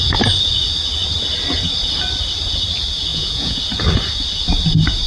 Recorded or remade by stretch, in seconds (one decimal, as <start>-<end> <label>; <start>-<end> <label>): 0.0-3.1 recorded; 3.1-3.6 remade; 3.6-5.1 recorded